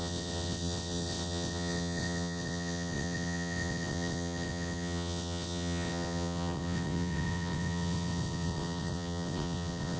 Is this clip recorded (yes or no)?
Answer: no